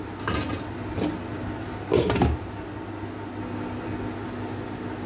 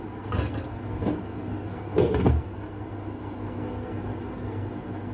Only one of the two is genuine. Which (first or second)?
first